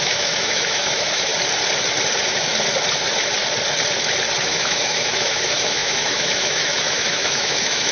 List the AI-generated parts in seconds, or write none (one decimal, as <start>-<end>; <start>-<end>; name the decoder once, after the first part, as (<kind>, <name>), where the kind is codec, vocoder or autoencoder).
0.0-1.3 (autoencoder, DAC-VAE); 4.4-7.9